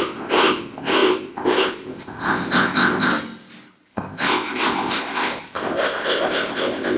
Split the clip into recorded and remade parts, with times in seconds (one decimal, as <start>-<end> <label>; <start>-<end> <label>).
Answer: 0.0-3.1 remade; 3.1-3.9 recorded; 3.9-7.0 remade

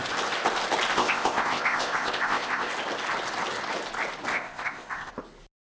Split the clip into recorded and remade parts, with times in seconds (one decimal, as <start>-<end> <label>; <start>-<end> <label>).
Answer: 0.0-0.9 recorded; 0.9-2.7 remade; 2.7-4.3 recorded; 4.3-5.1 remade; 5.1-5.8 recorded

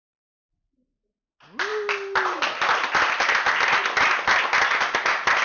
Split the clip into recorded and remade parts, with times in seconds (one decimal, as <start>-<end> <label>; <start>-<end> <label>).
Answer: 0.0-5.4 recorded

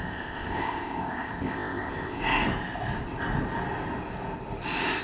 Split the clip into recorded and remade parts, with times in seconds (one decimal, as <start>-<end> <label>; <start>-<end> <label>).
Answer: 0.0-2.2 remade; 2.2-5.0 recorded